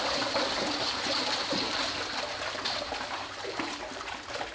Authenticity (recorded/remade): recorded